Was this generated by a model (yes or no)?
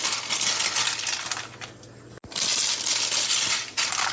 no